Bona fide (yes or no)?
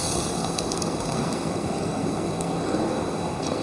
no